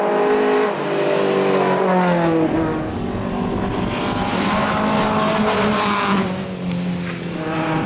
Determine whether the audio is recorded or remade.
recorded